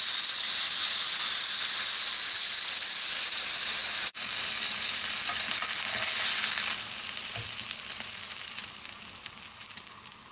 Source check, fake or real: real